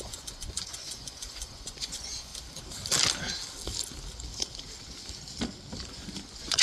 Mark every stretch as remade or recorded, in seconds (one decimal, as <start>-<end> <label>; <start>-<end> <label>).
0.0-2.3 remade; 2.3-5.9 recorded; 5.9-6.6 remade